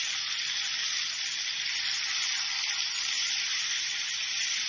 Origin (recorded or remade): remade